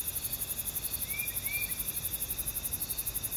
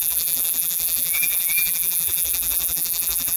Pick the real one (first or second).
first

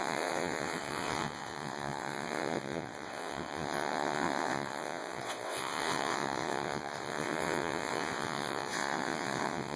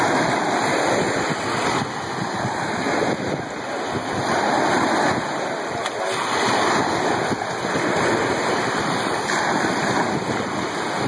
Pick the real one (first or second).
second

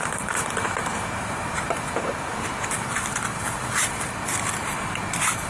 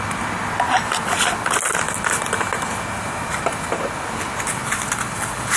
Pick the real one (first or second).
second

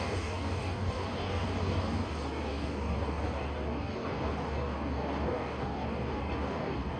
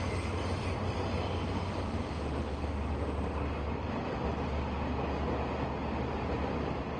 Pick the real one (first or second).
second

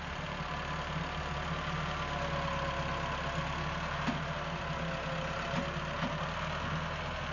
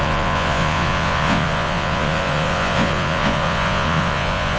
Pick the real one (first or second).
first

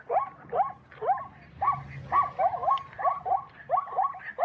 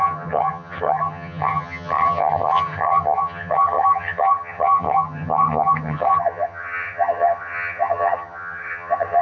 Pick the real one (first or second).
first